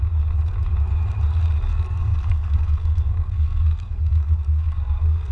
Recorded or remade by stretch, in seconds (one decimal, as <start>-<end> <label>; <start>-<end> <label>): 0.0-1.7 recorded; 1.7-5.3 remade